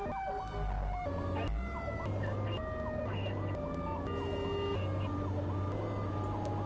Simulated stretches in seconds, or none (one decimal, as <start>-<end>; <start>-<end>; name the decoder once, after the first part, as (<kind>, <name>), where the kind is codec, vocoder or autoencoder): none